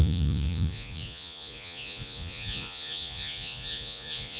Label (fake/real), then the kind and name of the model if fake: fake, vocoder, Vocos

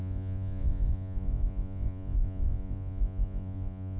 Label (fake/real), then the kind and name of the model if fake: fake, vocoder, Vocos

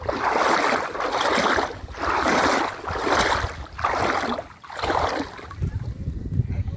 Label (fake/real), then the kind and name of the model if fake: real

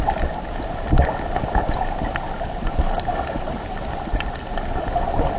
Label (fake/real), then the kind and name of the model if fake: real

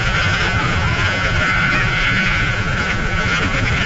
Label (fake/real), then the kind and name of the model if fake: fake, vocoder, Vocos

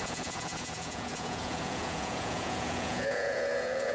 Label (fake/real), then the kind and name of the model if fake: fake, vocoder, Vocos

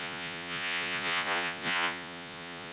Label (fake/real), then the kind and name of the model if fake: fake, vocoder, Vocos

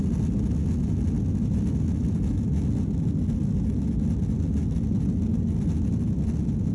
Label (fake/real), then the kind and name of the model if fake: real